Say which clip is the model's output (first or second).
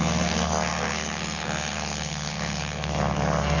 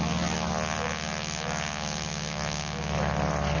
first